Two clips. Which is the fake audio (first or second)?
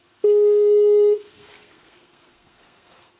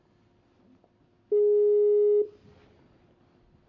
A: first